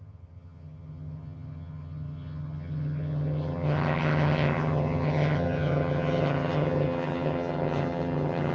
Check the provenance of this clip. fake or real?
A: fake